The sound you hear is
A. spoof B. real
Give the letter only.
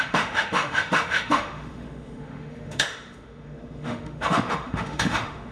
A